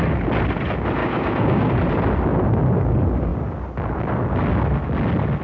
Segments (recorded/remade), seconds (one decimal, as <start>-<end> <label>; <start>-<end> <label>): 0.0-1.0 recorded; 1.0-1.7 remade; 1.7-5.4 recorded